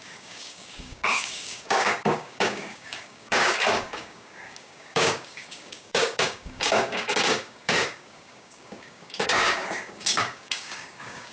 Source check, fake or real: fake